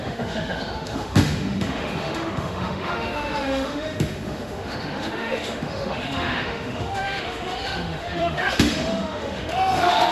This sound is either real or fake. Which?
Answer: fake